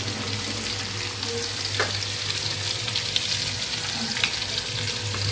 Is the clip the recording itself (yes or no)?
yes